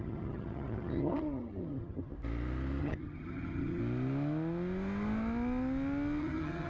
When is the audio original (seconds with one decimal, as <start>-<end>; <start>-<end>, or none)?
2.1-2.8; 3.8-6.2